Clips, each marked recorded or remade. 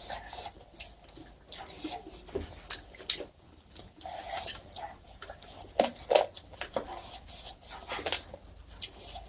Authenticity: recorded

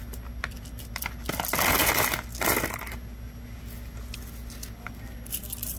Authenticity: recorded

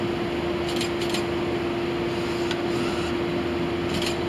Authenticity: recorded